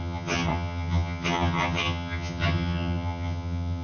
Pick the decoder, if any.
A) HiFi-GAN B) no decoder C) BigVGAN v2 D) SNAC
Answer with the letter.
A